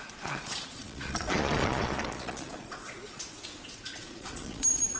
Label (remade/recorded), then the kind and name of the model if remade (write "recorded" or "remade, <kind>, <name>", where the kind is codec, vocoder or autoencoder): remade, vocoder, Vocos